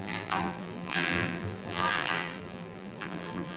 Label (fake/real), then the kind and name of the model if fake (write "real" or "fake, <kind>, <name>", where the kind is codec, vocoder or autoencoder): fake, vocoder, BigVGAN v2